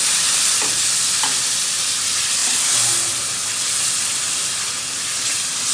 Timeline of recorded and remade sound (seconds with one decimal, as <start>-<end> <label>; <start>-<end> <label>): 0.0-5.7 recorded